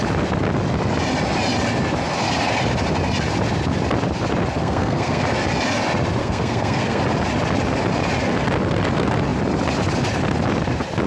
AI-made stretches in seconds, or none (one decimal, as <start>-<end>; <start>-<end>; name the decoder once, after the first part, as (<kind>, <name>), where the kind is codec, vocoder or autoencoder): 4.6-5.2 (codec, SNAC); 6.2-7.0